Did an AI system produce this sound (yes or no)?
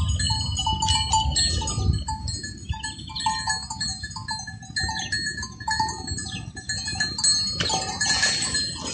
no